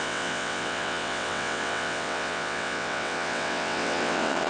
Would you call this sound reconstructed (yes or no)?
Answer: yes